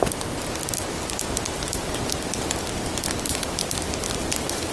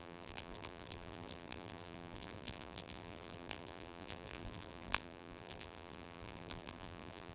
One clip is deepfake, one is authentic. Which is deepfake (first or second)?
second